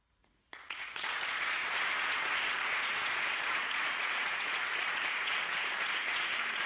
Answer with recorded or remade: remade